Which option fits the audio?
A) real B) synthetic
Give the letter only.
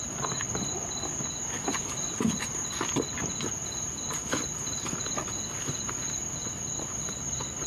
A